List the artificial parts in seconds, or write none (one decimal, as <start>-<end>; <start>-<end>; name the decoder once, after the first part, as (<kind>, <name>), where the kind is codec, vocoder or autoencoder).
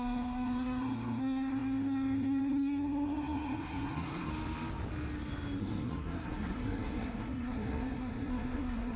0.0-4.3 (codec, SNAC); 5.6-9.0